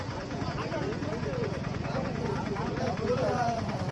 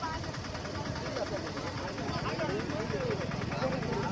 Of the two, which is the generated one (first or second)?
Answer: first